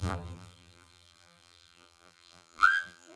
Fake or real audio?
fake